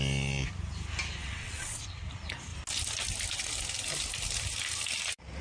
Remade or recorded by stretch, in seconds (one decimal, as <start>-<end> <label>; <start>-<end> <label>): 0.0-1.2 recorded; 1.2-1.8 remade; 1.8-5.4 recorded